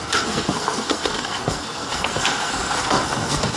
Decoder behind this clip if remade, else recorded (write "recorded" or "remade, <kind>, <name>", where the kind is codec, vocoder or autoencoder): remade, codec, SNAC